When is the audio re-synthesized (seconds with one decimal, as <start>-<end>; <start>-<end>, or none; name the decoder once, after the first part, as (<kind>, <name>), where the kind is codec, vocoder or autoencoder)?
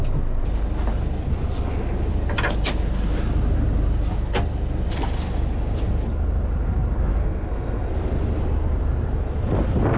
7.2-7.9 (codec, SNAC)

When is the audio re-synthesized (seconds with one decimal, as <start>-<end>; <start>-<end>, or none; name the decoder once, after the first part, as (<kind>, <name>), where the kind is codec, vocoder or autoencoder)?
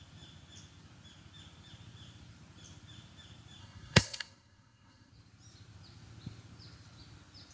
3.6-5.1 (codec, SNAC)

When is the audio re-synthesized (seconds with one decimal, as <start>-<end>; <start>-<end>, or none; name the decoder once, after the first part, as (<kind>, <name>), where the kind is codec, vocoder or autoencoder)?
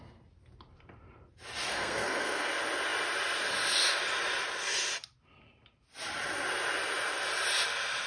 1.7-2.5 (codec, SNAC)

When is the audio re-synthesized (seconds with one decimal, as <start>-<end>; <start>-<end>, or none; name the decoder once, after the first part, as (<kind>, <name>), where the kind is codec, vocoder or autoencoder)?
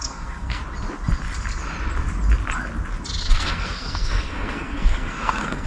0.0-0.6 (codec, SNAC); 3.2-5.7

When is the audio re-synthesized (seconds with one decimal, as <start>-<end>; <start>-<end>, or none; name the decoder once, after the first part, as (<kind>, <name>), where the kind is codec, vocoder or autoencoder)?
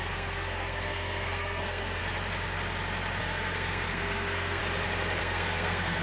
0.0-2.0 (codec, SNAC); 3.2-4.6; 5.2-6.0